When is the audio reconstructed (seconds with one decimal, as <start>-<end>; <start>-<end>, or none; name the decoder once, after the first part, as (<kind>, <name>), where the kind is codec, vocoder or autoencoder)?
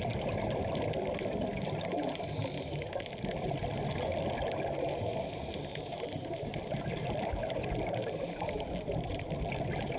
5.7-6.5 (vocoder, BigVGAN v2); 7.4-9.3